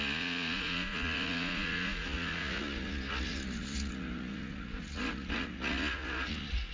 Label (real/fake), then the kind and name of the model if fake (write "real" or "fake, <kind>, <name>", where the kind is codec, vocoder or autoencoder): fake, vocoder, Vocos